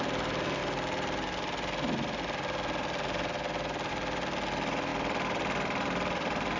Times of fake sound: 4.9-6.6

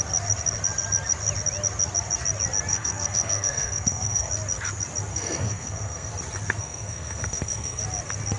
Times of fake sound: 2.7-4.3; 5.1-6.1; 6.6-7.8